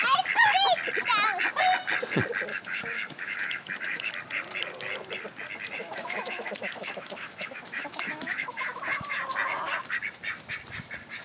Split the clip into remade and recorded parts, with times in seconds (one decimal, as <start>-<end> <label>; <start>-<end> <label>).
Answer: 0.0-2.5 recorded; 2.5-4.1 remade; 4.1-5.8 recorded; 5.8-9.2 remade; 9.2-11.2 recorded

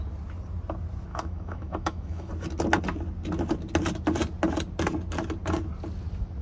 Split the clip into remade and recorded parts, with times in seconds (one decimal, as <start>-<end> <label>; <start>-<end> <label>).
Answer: 0.0-1.1 recorded; 1.1-2.3 remade; 2.3-6.4 recorded

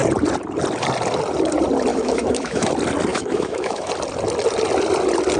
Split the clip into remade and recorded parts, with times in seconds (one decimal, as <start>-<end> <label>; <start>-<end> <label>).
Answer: 0.0-1.9 recorded; 1.9-2.7 remade; 2.7-3.1 recorded; 3.1-3.9 remade; 3.9-5.4 recorded